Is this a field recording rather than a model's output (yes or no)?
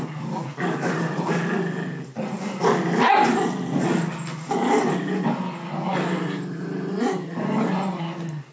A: yes